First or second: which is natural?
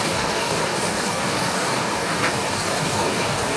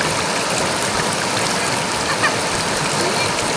second